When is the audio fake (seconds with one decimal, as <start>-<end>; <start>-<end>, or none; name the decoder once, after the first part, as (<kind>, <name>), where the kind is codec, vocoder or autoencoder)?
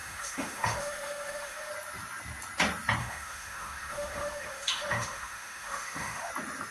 0.0-1.7 (autoencoder, DAC-VAE); 3.0-6.3